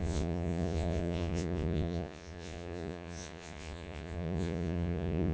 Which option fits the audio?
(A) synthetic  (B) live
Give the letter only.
A